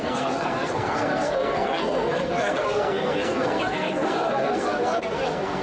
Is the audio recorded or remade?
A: remade